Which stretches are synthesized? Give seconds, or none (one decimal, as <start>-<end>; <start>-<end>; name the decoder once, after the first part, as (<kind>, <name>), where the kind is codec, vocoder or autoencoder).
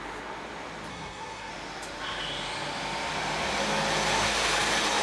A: 0.9-1.5 (codec, SNAC)